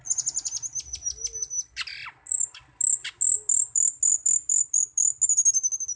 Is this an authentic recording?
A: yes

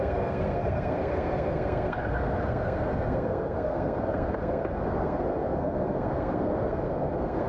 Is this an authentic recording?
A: no